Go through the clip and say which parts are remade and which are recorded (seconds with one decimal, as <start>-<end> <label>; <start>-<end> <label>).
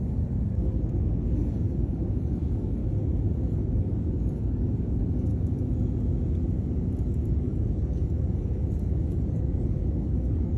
0.0-2.8 remade; 2.8-3.4 recorded; 3.4-5.3 remade; 5.3-7.0 recorded; 7.0-10.6 remade